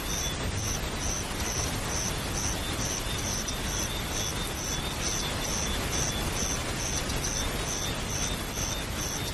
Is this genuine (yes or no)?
yes